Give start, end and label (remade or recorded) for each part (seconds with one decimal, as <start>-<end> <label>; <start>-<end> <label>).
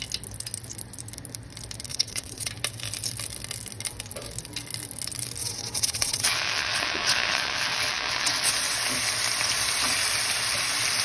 0.0-1.9 recorded; 1.9-2.5 remade; 2.5-5.4 recorded; 5.4-8.5 remade; 8.5-11.0 recorded